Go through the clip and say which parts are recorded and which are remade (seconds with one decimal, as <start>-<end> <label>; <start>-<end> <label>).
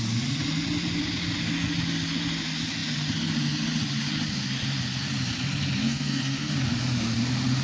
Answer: 0.0-5.8 recorded; 5.8-6.5 remade; 6.5-7.6 recorded